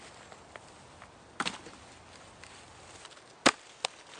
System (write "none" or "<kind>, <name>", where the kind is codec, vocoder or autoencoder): none